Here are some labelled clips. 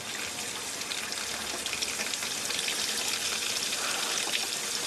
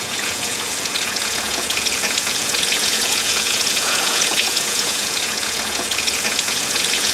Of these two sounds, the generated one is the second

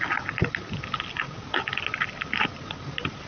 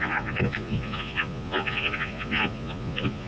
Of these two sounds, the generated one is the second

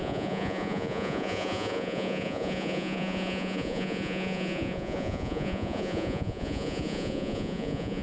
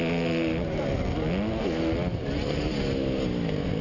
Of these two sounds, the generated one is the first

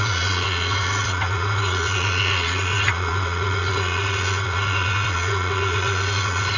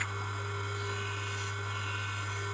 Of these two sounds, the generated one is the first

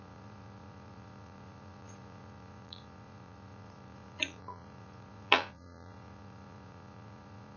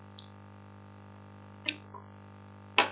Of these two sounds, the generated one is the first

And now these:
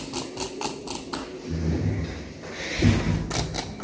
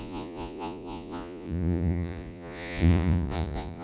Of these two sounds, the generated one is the second